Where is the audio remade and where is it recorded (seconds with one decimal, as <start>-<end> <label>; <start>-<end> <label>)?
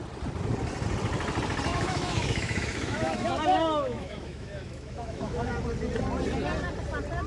0.0-1.7 recorded; 1.7-5.5 remade; 5.5-7.3 recorded